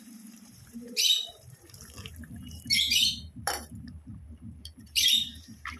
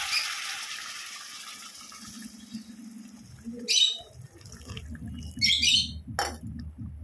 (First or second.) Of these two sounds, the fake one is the first